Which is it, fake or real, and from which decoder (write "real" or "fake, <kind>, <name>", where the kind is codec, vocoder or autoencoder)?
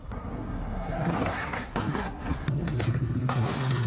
fake, codec, SNAC